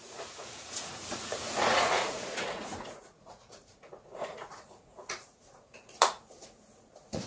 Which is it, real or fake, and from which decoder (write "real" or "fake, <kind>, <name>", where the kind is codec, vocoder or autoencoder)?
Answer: fake, vocoder, Vocos